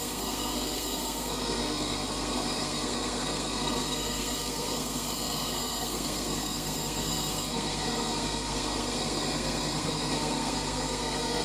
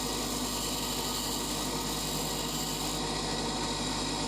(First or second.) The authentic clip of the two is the second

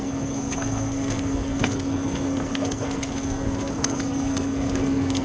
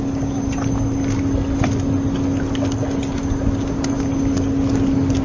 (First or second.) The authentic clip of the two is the second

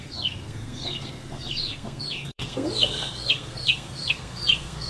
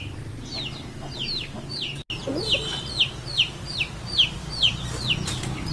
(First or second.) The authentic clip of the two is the second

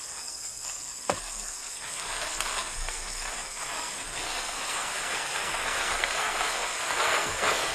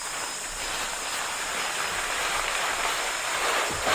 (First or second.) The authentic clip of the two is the second